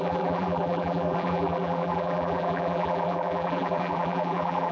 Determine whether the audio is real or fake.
fake